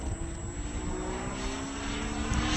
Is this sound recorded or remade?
recorded